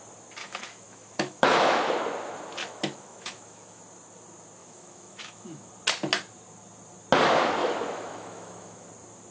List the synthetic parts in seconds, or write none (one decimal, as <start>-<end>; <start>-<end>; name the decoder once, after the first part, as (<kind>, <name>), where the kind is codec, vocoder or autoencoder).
0.4-1.9 (autoencoder, DAC-VAE); 2.6-3.8; 4.6-5.7; 7.6-8.9